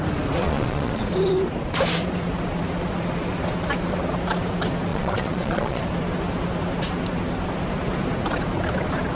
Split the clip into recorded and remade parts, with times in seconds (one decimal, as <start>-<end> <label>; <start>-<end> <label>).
0.0-0.4 recorded; 0.4-1.0 remade; 1.0-4.9 recorded; 4.9-5.8 remade; 5.8-9.2 recorded